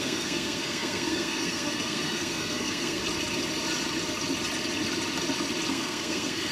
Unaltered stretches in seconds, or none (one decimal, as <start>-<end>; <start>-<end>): 3.0-5.7